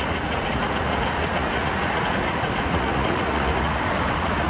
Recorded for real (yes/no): no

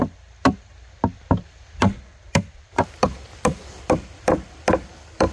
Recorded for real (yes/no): no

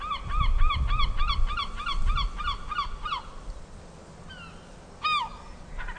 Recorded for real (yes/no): yes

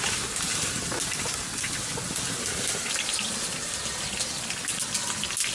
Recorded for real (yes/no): yes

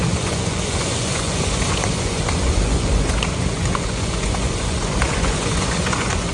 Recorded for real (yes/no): no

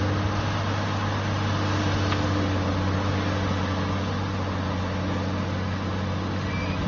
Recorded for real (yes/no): yes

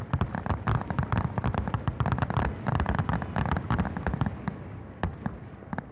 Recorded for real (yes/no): yes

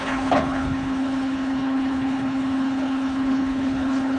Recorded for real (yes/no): no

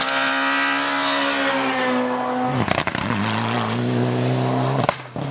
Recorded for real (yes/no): yes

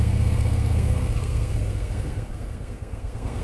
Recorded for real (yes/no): no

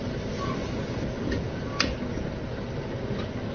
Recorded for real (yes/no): yes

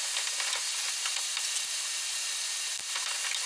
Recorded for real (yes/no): yes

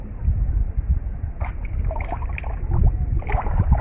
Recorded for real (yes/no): yes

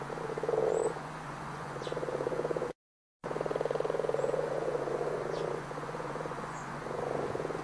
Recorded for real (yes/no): no